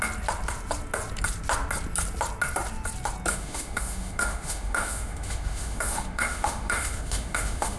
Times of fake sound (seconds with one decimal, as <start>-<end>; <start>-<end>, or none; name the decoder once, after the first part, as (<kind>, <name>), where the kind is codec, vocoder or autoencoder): 3.3-7.8 (autoencoder, DAC-VAE)